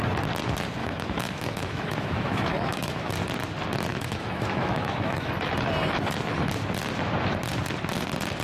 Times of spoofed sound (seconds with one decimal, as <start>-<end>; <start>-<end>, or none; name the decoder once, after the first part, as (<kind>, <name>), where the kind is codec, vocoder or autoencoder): 0.8-3.1 (autoencoder, DAC-VAE); 3.9-5.3